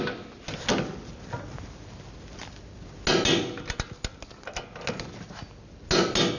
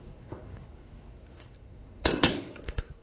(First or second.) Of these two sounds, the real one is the first